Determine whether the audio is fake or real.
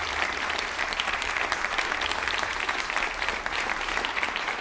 fake